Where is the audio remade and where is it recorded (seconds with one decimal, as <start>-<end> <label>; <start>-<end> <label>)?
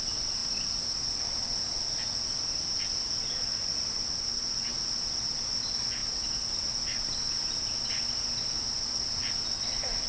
0.0-10.1 recorded